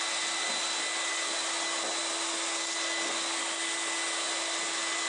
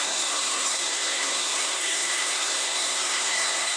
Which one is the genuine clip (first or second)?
first